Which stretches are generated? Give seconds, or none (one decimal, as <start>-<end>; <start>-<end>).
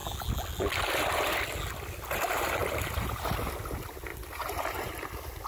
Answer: 2.6-3.3; 4.1-5.1